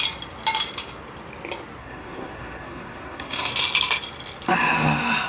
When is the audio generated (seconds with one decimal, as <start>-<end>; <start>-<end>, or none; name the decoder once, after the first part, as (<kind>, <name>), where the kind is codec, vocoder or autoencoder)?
1.8-3.5 (codec, SNAC)